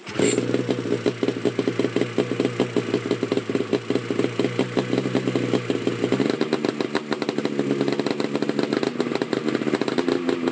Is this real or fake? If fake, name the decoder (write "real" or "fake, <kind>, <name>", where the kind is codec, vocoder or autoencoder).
real